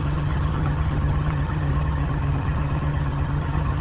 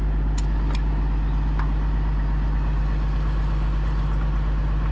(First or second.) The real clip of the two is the second